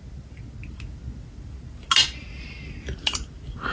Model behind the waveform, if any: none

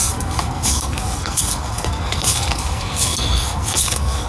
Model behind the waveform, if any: codec, SNAC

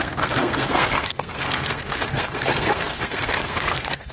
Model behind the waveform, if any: codec, SNAC